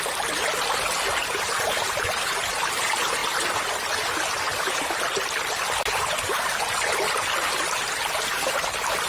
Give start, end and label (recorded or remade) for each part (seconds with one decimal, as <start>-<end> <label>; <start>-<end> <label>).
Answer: 0.0-9.1 recorded